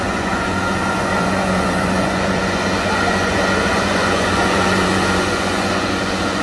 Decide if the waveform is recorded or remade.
remade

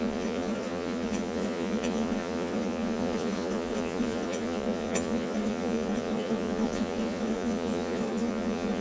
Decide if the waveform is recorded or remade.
remade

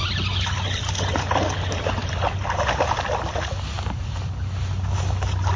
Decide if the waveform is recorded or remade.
recorded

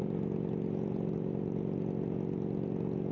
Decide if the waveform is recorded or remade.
recorded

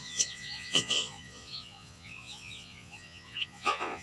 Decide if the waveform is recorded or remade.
remade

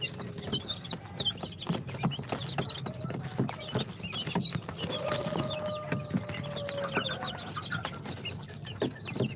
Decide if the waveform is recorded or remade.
recorded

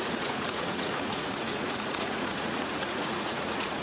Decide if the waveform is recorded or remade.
remade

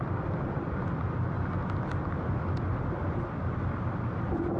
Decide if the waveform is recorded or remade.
recorded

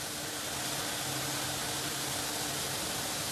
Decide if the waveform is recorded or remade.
recorded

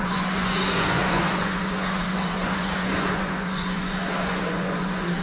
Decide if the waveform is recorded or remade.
remade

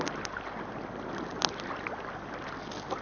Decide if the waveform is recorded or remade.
recorded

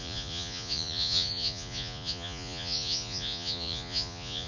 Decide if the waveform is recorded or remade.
remade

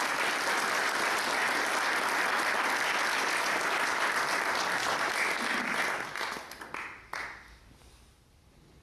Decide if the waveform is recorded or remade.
recorded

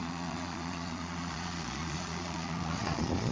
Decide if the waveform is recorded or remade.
remade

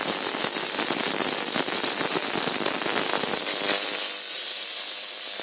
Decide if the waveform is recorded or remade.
recorded